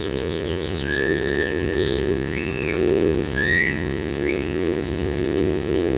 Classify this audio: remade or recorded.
remade